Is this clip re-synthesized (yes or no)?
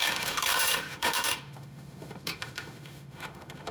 yes